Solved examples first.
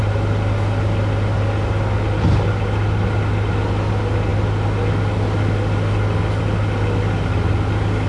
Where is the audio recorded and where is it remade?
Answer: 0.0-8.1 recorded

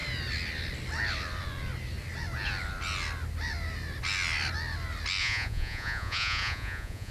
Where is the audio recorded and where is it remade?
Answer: 0.0-5.2 recorded; 5.2-7.1 remade

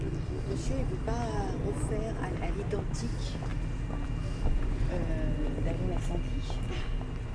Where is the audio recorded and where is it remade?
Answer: 0.0-7.3 recorded

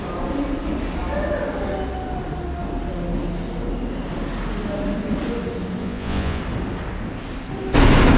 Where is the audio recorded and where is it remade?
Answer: 0.0-5.8 recorded; 5.8-6.4 remade; 6.4-8.2 recorded